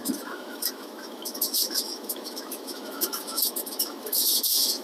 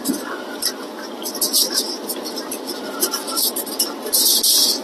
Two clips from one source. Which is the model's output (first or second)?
first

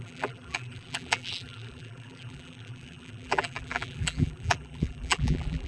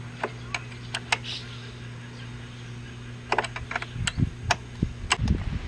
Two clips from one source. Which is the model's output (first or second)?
first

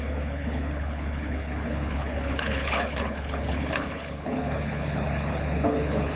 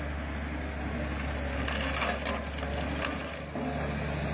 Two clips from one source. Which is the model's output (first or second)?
first